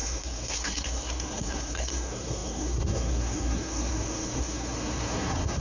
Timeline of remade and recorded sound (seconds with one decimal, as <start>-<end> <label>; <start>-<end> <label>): 0.0-5.6 remade

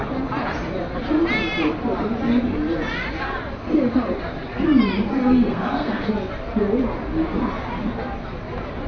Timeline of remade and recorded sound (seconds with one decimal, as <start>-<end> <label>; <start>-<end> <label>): 0.0-5.1 recorded; 5.1-6.1 remade; 6.1-8.9 recorded

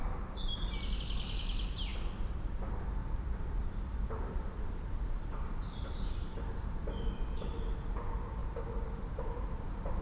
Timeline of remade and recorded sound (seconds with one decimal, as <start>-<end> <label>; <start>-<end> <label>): 0.0-3.0 recorded; 3.0-6.6 remade; 6.6-8.4 recorded; 8.4-9.6 remade; 9.6-10.0 recorded

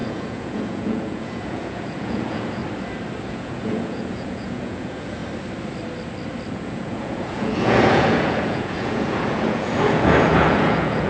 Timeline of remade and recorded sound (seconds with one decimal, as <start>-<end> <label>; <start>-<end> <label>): 0.0-2.6 remade; 2.6-3.3 recorded; 3.3-5.2 remade; 5.2-6.5 recorded; 6.5-11.1 remade